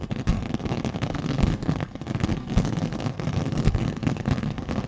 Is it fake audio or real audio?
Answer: fake